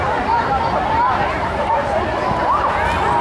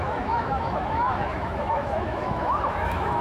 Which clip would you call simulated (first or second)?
second